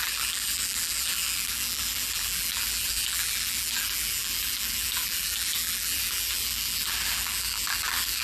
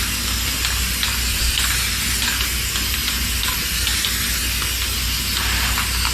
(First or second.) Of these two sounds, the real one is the second